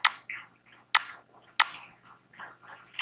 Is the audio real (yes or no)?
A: yes